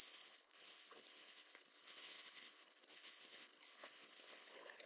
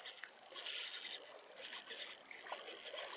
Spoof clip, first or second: first